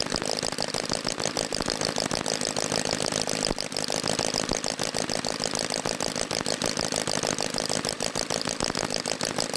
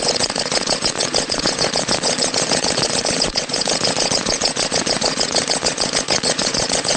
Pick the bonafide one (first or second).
first